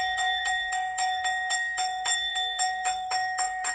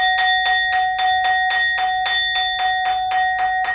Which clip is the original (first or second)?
second